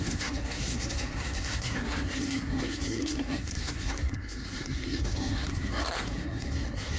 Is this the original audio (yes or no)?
no